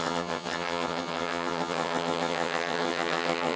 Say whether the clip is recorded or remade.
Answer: remade